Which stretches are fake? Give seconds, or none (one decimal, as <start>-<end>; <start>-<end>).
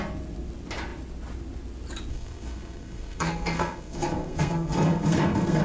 2.1-5.6